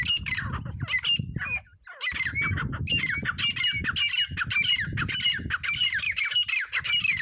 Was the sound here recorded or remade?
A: recorded